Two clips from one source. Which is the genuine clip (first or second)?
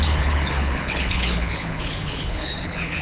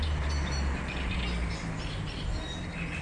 second